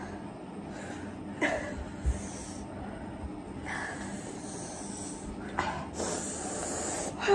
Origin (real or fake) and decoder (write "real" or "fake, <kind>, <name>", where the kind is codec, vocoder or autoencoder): real